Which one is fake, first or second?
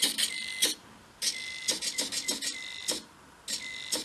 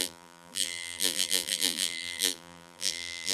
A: second